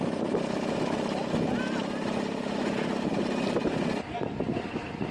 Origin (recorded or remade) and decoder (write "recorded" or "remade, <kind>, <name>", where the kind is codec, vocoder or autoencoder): recorded